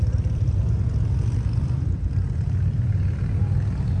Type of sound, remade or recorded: remade